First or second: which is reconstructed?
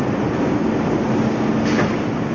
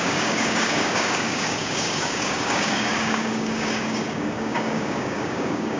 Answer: second